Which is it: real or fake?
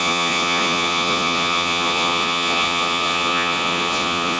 fake